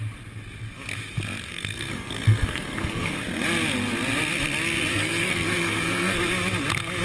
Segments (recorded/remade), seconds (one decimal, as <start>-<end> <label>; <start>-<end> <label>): 0.0-1.5 recorded; 1.5-3.2 remade; 3.2-4.9 recorded; 4.9-6.2 remade; 6.2-7.0 recorded